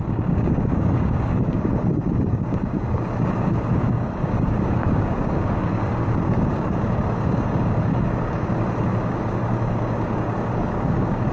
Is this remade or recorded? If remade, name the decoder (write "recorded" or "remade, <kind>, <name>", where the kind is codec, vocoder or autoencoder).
remade, codec, DAC